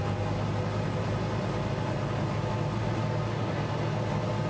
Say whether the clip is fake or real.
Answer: real